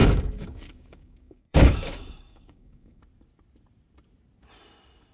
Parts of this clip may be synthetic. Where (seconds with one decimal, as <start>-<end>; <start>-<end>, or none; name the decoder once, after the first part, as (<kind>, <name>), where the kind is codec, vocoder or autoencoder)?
0.0-3.0 (codec, DAC)